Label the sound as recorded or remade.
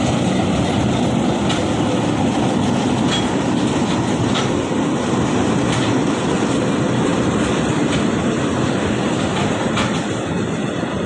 recorded